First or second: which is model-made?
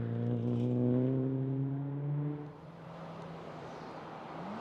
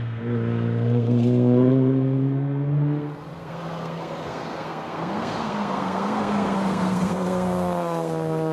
second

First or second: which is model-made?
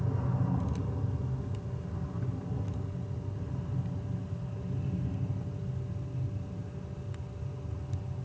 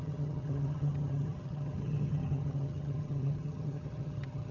second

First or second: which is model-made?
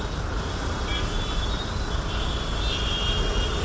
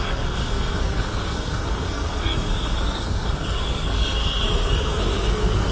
second